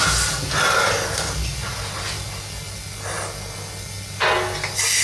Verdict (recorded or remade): recorded